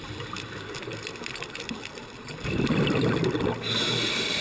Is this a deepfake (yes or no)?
no